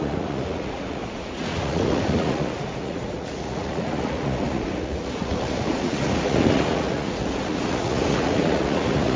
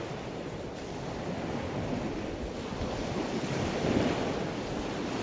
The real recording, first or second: second